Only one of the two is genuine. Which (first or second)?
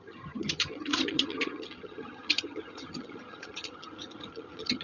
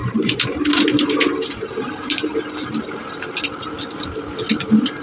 second